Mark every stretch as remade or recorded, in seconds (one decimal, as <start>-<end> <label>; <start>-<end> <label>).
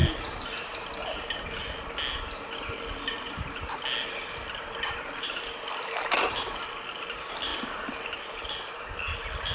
0.0-9.5 recorded